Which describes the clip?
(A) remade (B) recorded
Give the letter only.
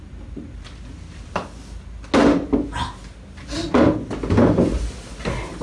B